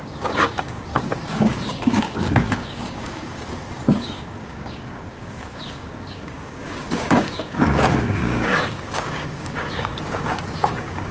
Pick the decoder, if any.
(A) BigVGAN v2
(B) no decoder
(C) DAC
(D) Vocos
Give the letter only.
C